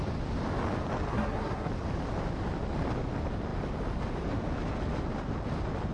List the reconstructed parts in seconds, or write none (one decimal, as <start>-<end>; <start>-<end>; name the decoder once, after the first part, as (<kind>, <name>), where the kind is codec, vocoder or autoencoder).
1.1-1.7 (codec, SNAC)